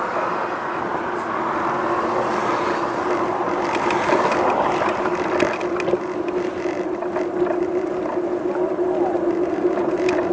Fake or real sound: real